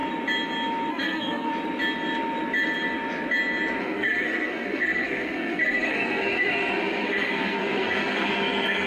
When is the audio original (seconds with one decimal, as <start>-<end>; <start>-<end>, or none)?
0.0-0.9; 1.5-3.8

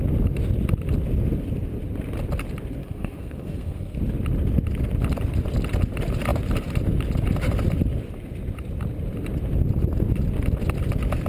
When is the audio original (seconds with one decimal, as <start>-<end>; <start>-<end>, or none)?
0.0-2.8; 4.0-11.3

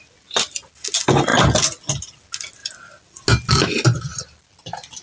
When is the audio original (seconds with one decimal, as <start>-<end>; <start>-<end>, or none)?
0.0-5.0

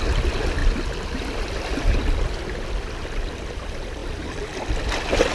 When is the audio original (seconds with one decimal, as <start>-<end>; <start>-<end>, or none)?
0.0-5.3

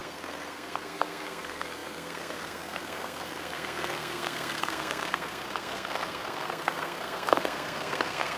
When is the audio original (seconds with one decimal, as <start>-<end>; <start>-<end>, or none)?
none